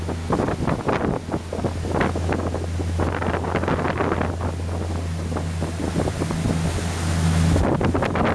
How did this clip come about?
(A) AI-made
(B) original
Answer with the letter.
B